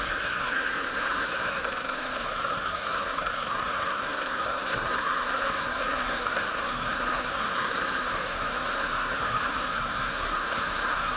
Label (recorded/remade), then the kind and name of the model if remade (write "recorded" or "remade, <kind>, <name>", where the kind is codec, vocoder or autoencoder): remade, codec, SNAC